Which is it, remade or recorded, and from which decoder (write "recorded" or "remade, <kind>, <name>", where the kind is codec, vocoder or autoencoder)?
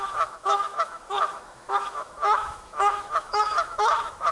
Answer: remade, autoencoder, DAC-VAE